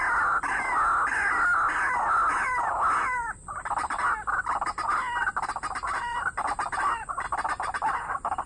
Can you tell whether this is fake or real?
real